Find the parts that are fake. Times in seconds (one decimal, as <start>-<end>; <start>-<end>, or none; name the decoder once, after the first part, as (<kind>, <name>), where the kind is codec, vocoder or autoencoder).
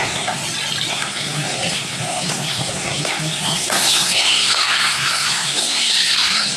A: 0.0-0.4 (codec, SNAC); 0.9-6.6